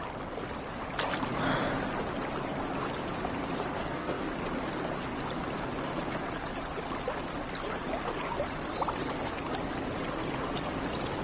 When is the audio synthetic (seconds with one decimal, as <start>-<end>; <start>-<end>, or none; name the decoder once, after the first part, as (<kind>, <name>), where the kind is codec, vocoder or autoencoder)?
3.8-4.3 (codec, SNAC)